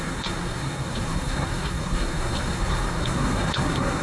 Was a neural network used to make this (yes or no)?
yes